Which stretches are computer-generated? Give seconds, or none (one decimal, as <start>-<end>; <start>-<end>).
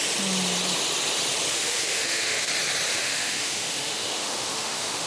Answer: 1.5-2.5; 2.9-5.1